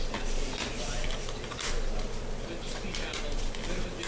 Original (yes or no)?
yes